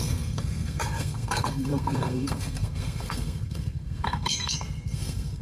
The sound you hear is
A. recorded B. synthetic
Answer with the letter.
B